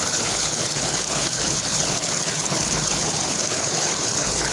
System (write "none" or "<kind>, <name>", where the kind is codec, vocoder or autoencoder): codec, HILCodec